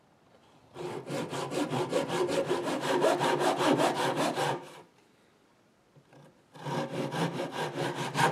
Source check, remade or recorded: recorded